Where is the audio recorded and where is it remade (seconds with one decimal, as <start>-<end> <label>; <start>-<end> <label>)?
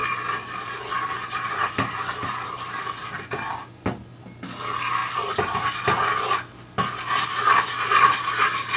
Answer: 0.0-8.8 recorded